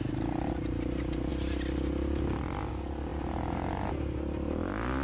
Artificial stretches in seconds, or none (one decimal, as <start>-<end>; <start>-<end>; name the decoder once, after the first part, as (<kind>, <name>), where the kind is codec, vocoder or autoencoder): none